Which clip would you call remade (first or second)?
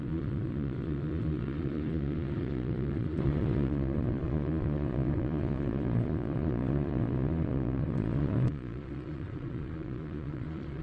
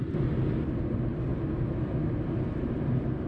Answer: first